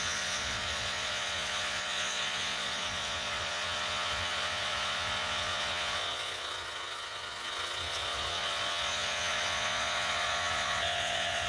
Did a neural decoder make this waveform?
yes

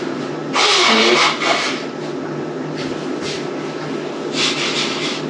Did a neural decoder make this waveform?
no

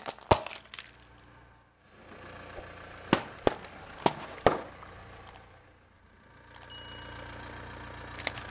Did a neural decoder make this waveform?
no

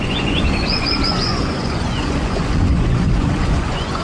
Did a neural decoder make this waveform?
yes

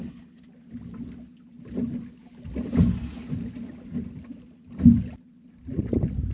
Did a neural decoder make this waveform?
no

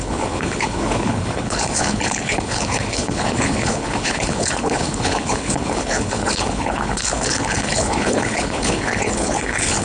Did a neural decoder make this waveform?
yes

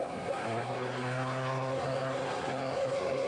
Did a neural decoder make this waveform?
yes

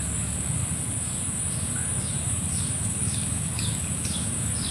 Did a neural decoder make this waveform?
yes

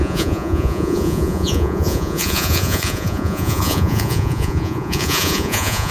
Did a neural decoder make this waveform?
yes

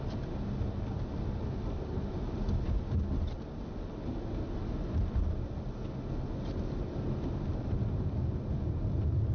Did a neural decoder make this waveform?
no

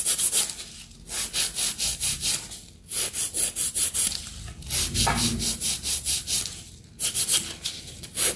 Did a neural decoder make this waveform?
no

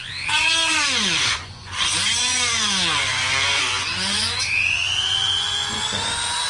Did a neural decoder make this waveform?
yes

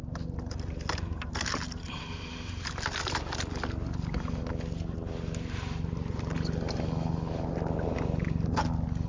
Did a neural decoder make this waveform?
no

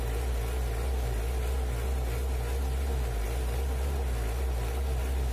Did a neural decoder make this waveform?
no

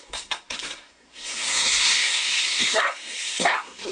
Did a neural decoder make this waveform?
yes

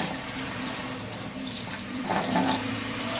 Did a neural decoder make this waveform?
yes